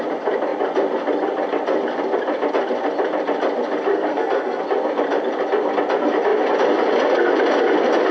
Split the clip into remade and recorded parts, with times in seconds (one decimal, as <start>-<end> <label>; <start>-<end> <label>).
0.0-3.9 recorded; 3.9-4.6 remade; 4.6-8.1 recorded